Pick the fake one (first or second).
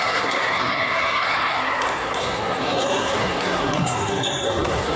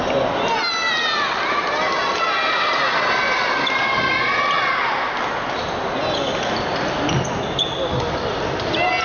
first